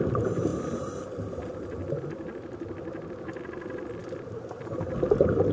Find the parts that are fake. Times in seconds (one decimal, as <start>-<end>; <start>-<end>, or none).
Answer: none